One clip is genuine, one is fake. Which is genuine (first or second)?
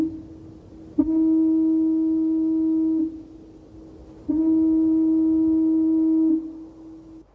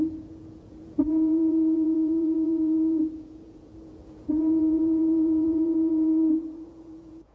first